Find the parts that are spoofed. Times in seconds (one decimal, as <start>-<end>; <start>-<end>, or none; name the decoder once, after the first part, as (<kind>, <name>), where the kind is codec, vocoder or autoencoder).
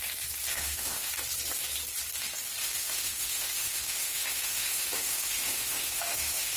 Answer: 0.5-1.1 (autoencoder, DAC-VAE); 2.6-6.6